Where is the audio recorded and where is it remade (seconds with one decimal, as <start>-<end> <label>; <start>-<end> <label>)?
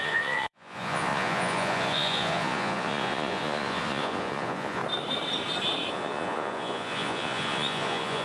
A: 0.0-4.8 remade; 4.8-5.9 recorded; 5.9-8.2 remade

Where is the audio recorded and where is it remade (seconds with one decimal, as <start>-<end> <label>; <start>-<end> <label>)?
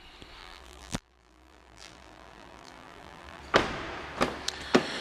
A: 0.0-0.4 recorded; 0.4-3.4 remade; 3.4-5.0 recorded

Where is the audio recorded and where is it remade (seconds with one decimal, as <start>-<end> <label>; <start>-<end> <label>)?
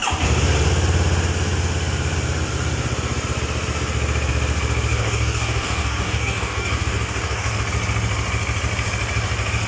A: 0.0-4.9 recorded; 4.9-7.6 remade; 7.6-9.7 recorded